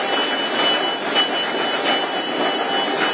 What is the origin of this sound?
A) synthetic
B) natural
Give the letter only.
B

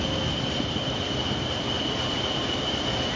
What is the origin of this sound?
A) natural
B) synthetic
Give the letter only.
A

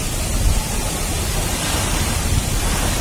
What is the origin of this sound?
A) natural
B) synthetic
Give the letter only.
A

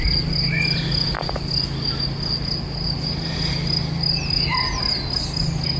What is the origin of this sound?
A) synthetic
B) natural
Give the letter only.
B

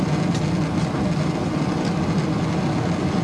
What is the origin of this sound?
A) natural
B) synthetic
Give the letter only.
A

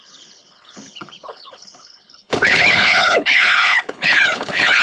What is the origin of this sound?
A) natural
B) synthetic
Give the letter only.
B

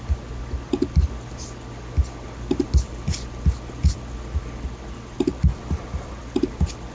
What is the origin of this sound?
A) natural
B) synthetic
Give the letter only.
A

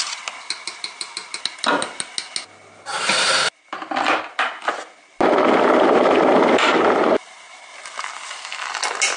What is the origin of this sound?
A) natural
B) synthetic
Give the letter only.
A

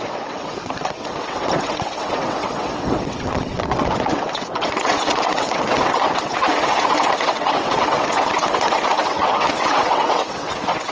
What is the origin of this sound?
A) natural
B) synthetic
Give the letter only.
B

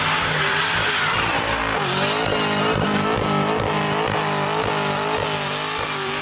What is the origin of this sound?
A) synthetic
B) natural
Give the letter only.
B